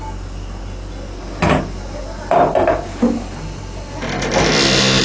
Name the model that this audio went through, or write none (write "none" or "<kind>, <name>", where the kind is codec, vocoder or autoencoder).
none